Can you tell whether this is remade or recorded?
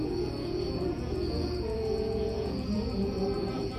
remade